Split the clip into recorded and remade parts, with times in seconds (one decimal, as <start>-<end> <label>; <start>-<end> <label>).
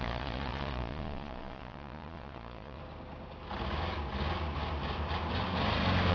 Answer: 0.0-2.8 remade; 2.8-6.1 recorded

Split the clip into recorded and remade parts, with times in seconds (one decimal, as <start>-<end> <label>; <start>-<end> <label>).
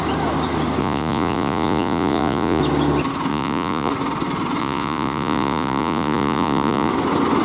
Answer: 0.0-0.8 recorded; 0.8-2.6 remade; 2.6-3.3 recorded; 3.3-3.9 remade; 3.9-4.6 recorded; 4.6-6.9 remade; 6.9-7.4 recorded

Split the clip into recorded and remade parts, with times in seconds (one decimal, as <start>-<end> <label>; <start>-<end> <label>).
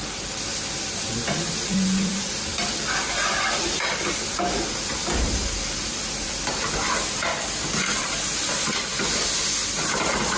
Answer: 0.0-10.4 remade